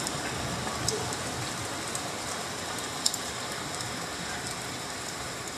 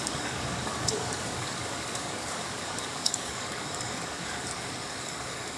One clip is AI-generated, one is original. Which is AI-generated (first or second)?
second